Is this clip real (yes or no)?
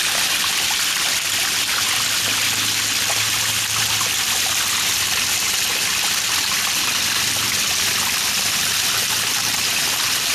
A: yes